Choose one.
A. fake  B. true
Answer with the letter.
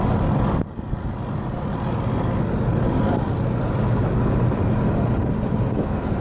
B